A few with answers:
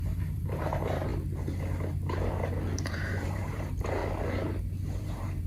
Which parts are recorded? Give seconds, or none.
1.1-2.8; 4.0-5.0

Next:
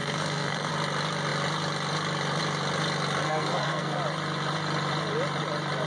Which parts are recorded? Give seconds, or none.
0.7-3.2; 4.0-5.9

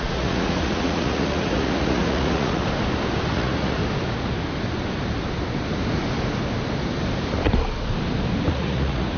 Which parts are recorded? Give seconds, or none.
2.6-3.3; 3.8-8.5